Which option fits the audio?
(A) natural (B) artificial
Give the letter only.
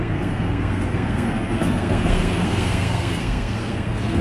B